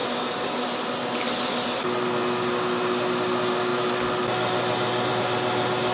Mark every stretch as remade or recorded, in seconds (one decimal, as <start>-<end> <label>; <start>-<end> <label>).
0.0-5.9 recorded